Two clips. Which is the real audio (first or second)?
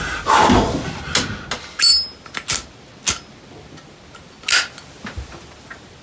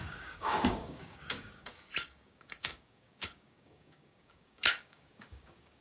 first